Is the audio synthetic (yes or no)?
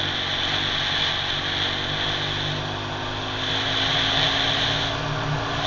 no